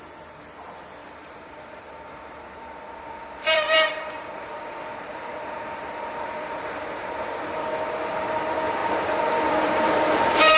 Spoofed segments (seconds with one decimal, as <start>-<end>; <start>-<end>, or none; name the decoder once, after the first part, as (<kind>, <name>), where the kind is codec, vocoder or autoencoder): 1.0-2.7 (vocoder, BigVGAN v2); 3.2-6.2; 8.8-9.9